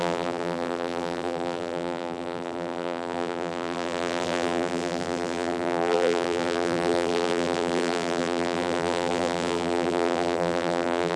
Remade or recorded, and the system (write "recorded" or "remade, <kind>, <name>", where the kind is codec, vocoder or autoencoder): remade, vocoder, BigVGAN v2